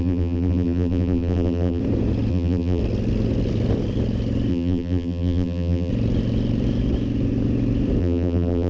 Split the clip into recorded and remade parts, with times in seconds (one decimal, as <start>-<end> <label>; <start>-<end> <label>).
0.0-1.8 remade; 1.8-2.3 recorded; 2.3-2.8 remade; 2.8-4.5 recorded; 4.5-5.9 remade; 5.9-8.0 recorded; 8.0-8.7 remade